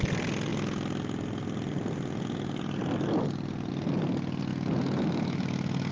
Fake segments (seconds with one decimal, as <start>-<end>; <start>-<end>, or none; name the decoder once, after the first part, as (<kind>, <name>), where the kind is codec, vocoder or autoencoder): 4.5-5.9 (autoencoder, DAC-VAE)